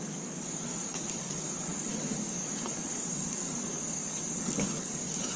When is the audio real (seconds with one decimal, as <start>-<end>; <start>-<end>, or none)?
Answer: none